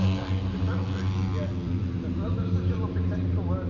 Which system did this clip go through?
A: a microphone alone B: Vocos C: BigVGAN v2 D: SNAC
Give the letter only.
A